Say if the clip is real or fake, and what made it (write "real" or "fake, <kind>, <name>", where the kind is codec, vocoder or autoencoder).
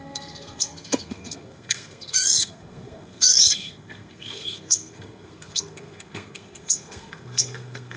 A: fake, codec, SNAC